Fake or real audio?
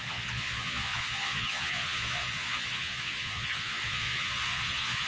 fake